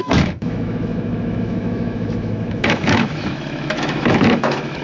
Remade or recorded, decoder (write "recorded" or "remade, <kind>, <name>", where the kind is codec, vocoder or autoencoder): remade, autoencoder, DAC-VAE